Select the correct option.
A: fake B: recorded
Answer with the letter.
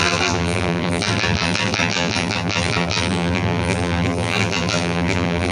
A